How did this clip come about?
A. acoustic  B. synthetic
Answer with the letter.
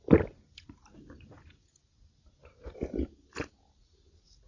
A